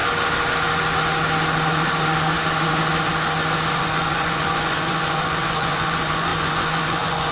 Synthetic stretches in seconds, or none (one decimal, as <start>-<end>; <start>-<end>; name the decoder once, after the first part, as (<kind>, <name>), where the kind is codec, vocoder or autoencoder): 3.7-7.3 (vocoder, Vocos)